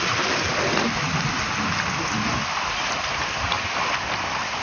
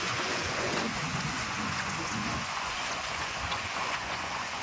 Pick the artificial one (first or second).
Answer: second